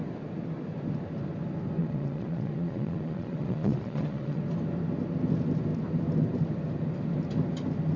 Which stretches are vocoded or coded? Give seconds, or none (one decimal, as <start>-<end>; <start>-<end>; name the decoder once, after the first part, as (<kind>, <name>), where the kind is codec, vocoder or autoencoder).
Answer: 1.8-4.4 (vocoder, Vocos)

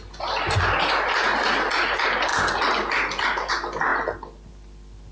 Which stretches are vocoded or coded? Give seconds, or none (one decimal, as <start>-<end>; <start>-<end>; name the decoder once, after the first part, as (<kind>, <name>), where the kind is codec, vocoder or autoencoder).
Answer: none

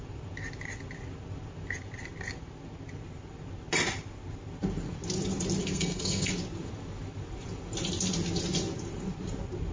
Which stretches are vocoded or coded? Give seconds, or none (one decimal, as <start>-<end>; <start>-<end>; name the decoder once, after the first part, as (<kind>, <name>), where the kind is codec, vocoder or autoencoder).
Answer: 5.6-6.3 (codec, SNAC)

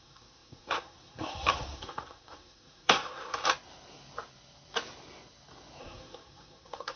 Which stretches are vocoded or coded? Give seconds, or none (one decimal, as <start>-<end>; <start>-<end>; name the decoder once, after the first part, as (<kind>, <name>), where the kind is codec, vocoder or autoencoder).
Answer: 0.0-3.3 (codec, SNAC); 5.8-7.0

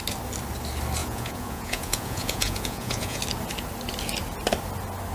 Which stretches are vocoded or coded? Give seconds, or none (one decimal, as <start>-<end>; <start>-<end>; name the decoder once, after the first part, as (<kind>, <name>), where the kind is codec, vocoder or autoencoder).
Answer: 1.0-3.2 (vocoder, Vocos)

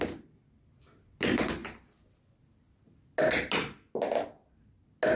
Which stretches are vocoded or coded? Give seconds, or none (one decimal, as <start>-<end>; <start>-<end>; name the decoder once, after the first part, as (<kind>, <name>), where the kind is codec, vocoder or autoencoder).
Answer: none